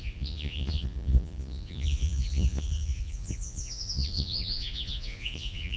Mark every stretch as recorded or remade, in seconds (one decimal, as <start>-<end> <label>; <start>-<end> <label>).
0.0-5.8 remade